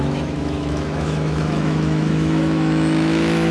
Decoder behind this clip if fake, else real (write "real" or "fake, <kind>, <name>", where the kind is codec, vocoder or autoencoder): fake, autoencoder, DAC-VAE